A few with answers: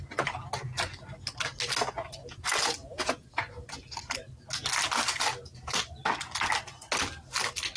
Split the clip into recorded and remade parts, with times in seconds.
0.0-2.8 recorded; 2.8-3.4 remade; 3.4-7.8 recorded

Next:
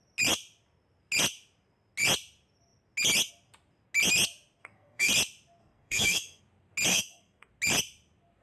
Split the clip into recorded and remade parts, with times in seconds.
0.0-4.6 recorded; 4.6-5.1 remade; 5.1-5.6 recorded; 5.6-6.4 remade; 6.4-6.9 recorded; 6.9-7.5 remade; 7.5-8.4 recorded

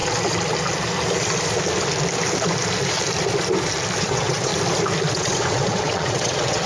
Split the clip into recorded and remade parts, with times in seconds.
0.0-4.0 recorded; 4.0-4.5 remade; 4.5-5.1 recorded; 5.1-6.7 remade

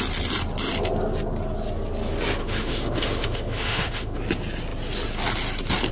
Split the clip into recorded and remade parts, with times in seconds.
0.0-2.4 recorded; 2.4-4.2 remade; 4.2-5.9 recorded

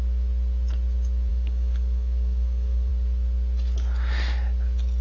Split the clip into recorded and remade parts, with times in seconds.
0.0-1.3 recorded; 1.3-2.9 remade; 2.9-5.0 recorded

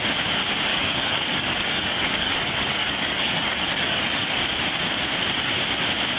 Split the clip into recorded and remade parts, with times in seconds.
0.0-0.7 recorded; 0.7-4.4 remade; 4.4-6.2 recorded

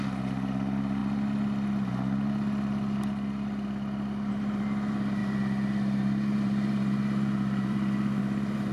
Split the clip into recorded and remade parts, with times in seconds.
0.0-1.0 remade; 1.0-4.3 recorded; 4.3-8.7 remade

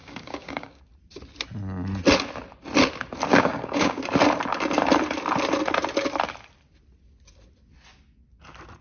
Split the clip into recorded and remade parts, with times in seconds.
0.0-0.8 remade; 0.8-3.3 recorded; 3.3-4.0 remade; 4.0-8.8 recorded